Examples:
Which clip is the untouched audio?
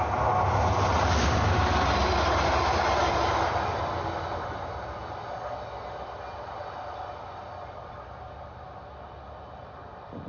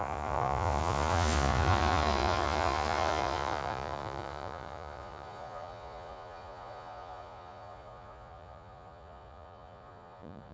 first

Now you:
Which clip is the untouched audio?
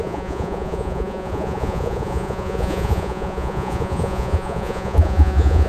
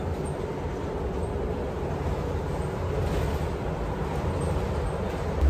second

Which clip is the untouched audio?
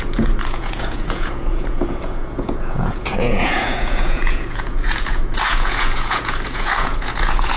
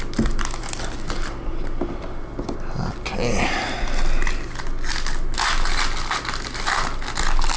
second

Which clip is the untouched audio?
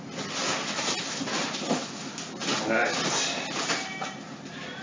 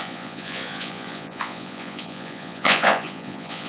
first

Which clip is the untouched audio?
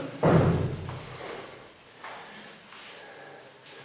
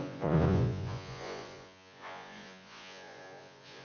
first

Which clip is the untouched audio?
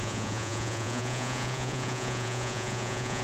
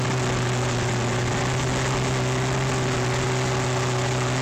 second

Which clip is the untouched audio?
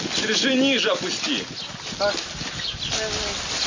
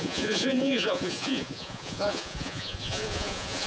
first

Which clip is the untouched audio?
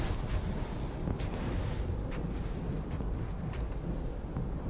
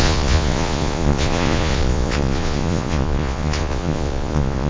first